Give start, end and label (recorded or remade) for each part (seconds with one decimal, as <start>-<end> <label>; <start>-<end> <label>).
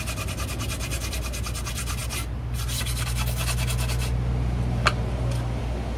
0.0-6.0 recorded